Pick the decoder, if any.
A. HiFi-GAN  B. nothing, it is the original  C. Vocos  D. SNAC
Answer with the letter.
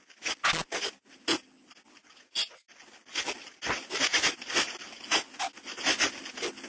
B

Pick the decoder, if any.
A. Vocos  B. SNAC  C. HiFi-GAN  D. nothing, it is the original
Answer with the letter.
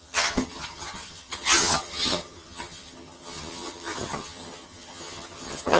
C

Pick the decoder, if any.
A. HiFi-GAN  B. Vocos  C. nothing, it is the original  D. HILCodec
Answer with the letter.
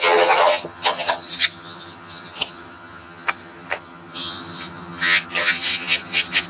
A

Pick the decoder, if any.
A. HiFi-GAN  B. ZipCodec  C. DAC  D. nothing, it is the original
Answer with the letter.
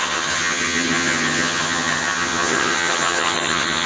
A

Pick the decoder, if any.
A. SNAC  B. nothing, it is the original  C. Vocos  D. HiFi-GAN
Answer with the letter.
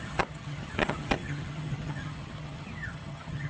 D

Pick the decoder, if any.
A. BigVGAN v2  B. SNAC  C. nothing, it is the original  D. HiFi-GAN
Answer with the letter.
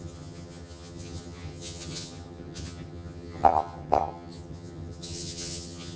D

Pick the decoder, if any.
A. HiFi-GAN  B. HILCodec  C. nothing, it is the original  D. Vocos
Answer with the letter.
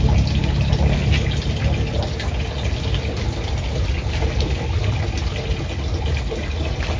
C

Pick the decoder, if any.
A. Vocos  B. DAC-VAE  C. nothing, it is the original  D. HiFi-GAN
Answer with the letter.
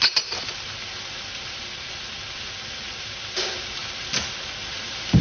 C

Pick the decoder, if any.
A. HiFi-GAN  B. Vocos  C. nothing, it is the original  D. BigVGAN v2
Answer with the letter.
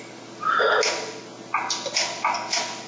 C